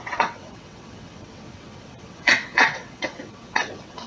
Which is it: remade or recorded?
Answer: remade